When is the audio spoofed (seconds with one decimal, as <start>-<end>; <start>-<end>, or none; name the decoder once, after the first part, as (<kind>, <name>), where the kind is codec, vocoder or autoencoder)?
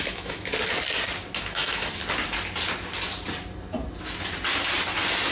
0.0-0.5 (autoencoder, DAC-VAE); 1.4-2.0